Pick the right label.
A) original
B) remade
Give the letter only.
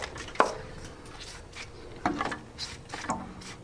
A